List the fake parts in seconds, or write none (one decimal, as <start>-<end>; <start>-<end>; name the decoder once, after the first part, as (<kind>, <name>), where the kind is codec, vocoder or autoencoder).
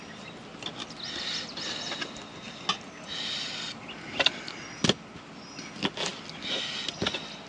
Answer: none